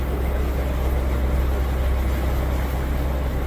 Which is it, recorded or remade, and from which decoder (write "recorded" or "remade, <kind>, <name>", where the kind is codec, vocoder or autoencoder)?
recorded